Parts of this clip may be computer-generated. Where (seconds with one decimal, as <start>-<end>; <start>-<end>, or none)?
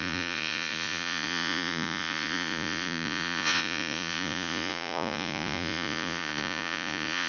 0.0-7.3